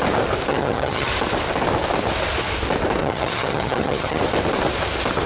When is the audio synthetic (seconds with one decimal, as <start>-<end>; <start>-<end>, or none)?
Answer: 0.5-1.1; 3.0-4.2